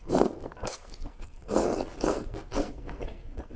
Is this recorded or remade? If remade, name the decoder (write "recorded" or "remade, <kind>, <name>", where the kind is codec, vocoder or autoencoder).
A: remade, codec, SNAC